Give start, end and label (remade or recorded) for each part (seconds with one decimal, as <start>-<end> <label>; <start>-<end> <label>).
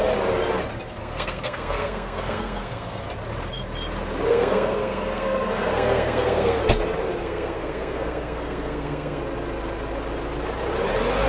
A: 0.0-1.0 recorded; 1.0-3.0 remade; 3.0-4.3 recorded; 4.3-6.6 remade; 6.6-7.2 recorded; 7.2-9.2 remade; 9.2-11.3 recorded